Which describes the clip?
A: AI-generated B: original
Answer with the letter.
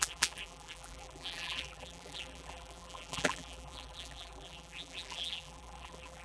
A